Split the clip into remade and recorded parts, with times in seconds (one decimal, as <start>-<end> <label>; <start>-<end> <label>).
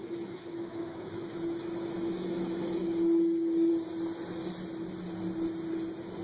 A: 0.0-3.7 remade; 3.7-6.2 recorded